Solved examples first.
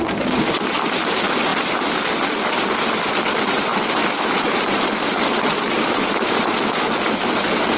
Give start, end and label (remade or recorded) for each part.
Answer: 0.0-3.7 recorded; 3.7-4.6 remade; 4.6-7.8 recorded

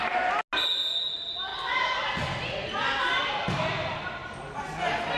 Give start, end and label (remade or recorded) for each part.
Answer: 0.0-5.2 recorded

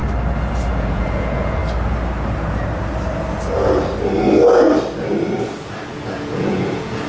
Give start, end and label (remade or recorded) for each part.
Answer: 0.0-0.8 recorded; 0.8-1.6 remade; 1.6-5.9 recorded; 5.9-7.1 remade